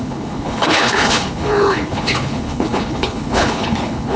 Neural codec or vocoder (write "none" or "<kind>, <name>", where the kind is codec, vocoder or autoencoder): codec, HILCodec